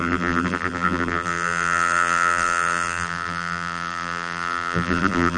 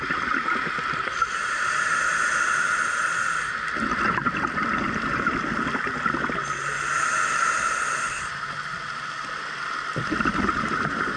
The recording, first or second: second